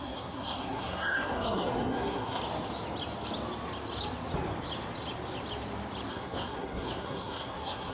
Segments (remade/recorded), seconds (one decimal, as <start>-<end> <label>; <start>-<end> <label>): 0.0-2.4 remade; 2.4-6.1 recorded; 6.1-7.9 remade